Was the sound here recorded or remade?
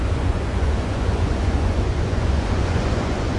remade